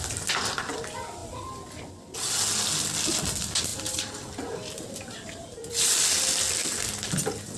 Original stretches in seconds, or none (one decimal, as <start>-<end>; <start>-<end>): 0.0-3.7; 5.7-7.6